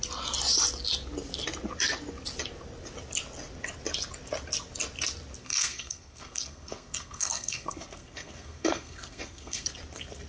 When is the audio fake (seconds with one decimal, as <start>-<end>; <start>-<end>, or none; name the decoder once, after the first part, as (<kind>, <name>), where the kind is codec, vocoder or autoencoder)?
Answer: 5.4-9.7 (codec, SNAC)